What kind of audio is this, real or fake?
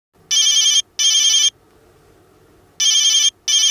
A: real